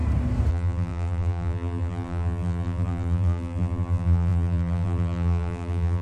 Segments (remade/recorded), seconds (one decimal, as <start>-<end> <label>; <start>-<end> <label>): 0.0-0.5 recorded; 0.5-6.0 remade